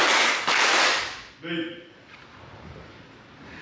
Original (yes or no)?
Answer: yes